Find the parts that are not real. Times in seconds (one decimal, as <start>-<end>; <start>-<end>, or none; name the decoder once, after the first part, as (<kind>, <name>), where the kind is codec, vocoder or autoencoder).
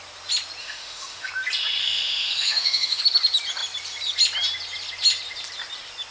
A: 0.6-1.3 (autoencoder, DAC-VAE); 1.8-3.0